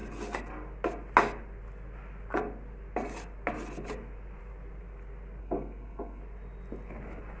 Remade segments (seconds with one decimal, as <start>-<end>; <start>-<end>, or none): 5.4-6.2